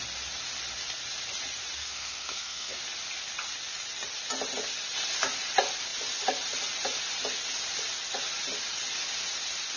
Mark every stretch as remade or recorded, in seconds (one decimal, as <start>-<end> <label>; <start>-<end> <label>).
0.0-1.8 recorded; 1.8-2.8 remade; 2.8-9.8 recorded